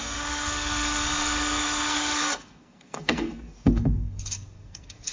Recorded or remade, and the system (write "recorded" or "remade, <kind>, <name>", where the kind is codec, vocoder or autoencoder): remade, codec, SNAC